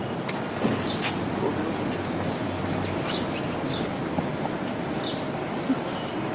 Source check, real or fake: real